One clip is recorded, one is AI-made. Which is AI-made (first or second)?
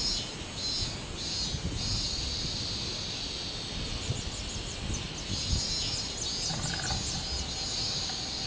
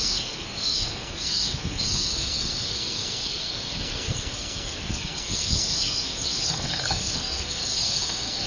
second